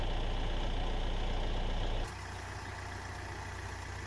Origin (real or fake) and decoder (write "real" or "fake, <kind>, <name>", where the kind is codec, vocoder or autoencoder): real